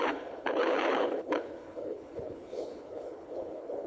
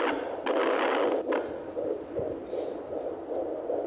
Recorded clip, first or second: second